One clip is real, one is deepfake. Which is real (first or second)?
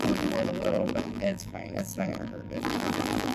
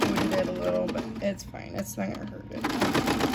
second